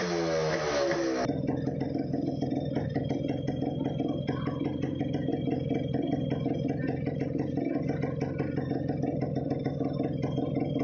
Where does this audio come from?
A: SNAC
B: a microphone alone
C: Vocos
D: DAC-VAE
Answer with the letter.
B